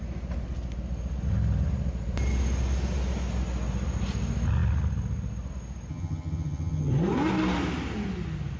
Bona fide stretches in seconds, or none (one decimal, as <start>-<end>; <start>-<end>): 0.0-5.9; 6.9-8.6